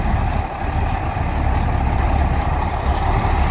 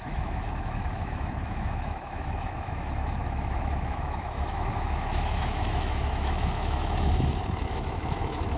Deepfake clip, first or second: second